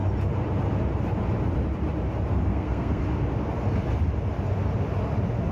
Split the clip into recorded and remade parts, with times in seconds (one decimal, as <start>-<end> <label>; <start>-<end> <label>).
0.0-2.5 recorded; 2.5-3.0 remade; 3.0-5.5 recorded